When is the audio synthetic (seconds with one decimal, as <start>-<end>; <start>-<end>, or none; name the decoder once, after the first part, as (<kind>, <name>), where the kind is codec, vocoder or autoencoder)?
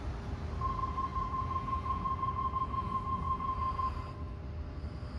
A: 1.1-3.9 (vocoder, Vocos)